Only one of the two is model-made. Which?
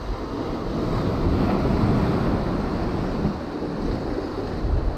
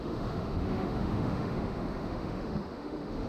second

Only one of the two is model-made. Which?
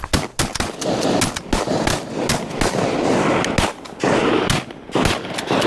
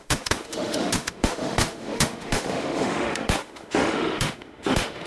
second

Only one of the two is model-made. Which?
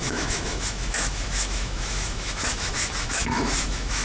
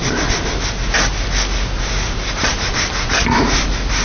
first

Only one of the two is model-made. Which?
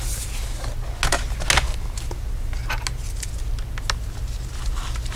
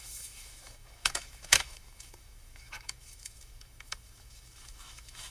second